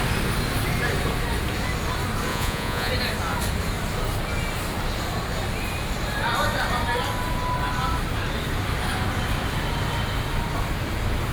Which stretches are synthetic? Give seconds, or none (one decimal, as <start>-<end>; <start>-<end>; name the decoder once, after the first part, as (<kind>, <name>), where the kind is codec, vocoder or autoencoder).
2.3-2.9 (vocoder, Vocos)